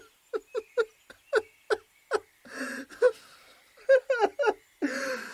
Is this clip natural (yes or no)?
yes